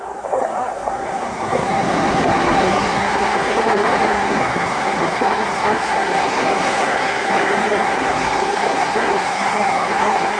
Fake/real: fake